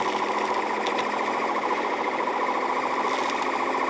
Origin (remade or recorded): recorded